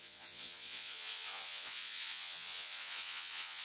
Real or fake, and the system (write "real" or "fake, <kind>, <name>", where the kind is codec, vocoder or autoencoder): fake, vocoder, Vocos